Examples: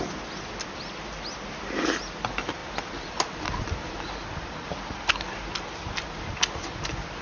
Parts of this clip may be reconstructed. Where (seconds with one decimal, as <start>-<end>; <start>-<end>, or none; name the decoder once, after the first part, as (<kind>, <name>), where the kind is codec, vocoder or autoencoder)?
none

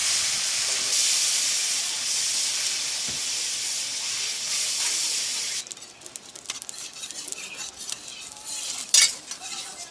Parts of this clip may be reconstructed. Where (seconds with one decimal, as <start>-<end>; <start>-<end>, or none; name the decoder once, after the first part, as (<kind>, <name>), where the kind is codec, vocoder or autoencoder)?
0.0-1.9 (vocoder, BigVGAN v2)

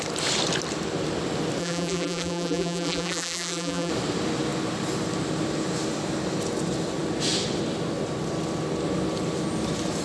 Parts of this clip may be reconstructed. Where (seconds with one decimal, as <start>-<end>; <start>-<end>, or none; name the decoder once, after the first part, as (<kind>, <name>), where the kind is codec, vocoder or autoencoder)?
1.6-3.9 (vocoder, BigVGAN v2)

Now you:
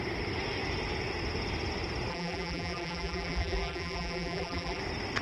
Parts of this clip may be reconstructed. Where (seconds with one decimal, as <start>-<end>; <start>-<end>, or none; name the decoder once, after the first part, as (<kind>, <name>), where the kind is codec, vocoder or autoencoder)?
2.1-4.8 (vocoder, BigVGAN v2)

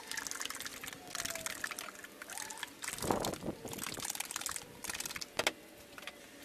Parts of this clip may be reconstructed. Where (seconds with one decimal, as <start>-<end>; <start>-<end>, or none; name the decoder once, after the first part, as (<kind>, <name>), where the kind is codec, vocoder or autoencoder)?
none

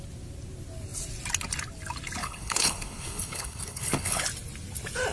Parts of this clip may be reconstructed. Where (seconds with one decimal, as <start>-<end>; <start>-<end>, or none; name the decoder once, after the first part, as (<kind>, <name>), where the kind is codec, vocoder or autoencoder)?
2.2-4.2 (codec, HILCodec)

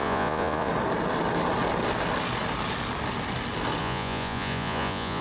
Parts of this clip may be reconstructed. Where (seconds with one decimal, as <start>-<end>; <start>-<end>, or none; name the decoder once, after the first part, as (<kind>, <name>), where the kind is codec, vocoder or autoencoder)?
0.0-0.7 (vocoder, Vocos); 3.8-5.2